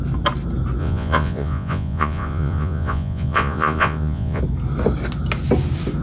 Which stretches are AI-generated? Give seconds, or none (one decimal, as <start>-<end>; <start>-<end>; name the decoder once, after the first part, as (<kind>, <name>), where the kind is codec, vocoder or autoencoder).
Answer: 0.8-4.4 (vocoder, Vocos)

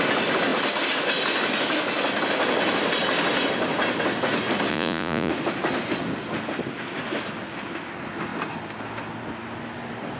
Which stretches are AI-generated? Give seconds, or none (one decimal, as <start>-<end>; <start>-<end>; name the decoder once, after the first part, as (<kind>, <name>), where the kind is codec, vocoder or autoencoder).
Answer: 4.7-5.3 (vocoder, Vocos)